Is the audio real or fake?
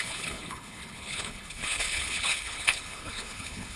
fake